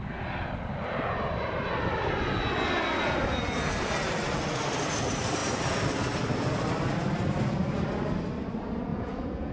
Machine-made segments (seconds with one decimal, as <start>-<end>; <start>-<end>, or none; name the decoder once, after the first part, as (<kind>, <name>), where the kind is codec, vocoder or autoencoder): 8.9-9.5 (vocoder, Vocos)